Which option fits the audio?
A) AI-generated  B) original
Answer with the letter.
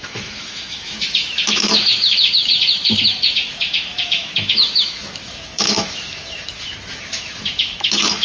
A